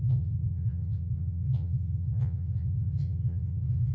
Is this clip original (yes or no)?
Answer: no